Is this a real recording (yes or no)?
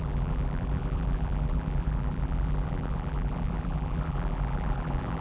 no